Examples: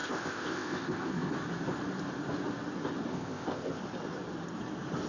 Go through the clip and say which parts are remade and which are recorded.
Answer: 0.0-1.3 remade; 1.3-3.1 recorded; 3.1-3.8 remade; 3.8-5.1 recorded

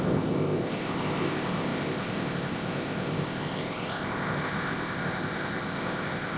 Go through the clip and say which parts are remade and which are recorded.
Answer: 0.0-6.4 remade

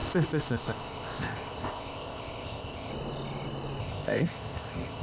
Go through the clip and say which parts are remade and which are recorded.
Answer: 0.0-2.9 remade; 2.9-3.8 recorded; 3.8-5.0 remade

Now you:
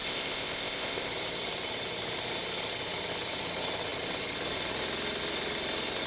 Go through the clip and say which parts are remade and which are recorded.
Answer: 0.0-1.1 remade; 1.1-6.1 recorded